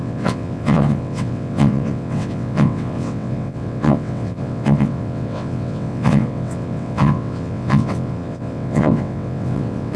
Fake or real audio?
fake